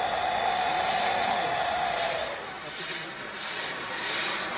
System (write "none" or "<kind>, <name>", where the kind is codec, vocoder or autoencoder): none